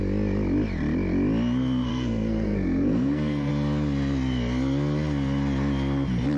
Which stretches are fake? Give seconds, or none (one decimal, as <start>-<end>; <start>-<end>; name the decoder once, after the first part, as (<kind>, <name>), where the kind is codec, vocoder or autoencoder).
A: 1.9-3.5 (codec, SNAC)

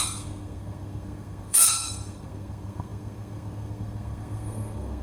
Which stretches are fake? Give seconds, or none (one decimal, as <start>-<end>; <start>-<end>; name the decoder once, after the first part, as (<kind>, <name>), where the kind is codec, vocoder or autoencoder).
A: 0.0-5.0 (codec, SNAC)

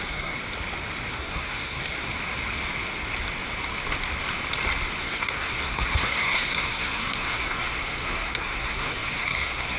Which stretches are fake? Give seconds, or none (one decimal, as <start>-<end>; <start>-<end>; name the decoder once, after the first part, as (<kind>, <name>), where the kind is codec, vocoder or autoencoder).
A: 0.0-0.4 (codec, SNAC); 1.1-2.1; 5.0-9.8

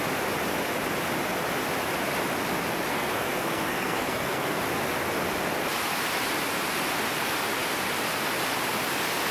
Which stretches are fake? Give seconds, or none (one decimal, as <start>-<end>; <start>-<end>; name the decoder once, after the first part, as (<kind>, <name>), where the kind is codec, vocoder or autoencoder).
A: 2.9-4.6 (codec, SNAC)

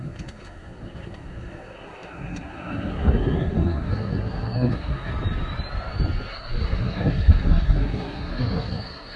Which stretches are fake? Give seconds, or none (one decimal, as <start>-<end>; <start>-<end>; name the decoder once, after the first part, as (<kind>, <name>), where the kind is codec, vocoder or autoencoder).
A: 0.0-5.1 (codec, SNAC); 6.3-9.2

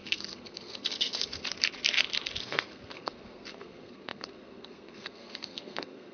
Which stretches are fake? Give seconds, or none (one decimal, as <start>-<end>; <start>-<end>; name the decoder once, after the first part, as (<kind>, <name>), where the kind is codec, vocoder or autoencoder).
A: 0.0-1.4 (codec, SNAC); 2.4-6.1